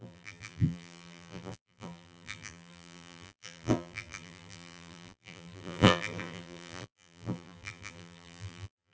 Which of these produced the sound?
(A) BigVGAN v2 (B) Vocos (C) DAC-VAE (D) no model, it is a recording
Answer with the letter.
A